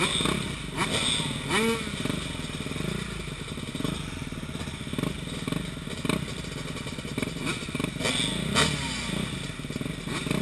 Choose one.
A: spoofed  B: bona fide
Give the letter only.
B